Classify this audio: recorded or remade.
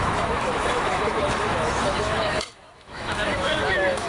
remade